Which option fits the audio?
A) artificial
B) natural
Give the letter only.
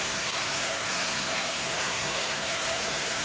A